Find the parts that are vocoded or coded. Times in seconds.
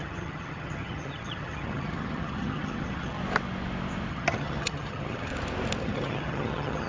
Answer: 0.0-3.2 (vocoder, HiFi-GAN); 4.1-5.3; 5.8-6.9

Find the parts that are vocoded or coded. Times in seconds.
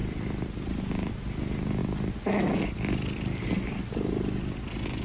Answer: none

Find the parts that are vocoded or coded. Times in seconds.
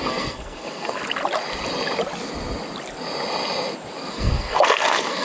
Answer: 0.0-1.0 (codec, SNAC); 4.1-5.2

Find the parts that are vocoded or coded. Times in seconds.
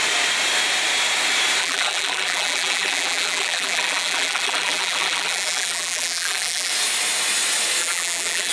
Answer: 1.6-6.7 (vocoder, BigVGAN v2); 7.8-8.5